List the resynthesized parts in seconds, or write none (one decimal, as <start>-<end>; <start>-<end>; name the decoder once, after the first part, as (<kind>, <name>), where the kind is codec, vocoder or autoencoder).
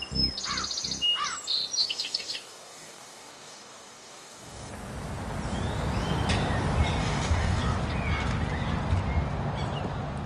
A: 1.8-4.7 (codec, DAC); 7.0-7.6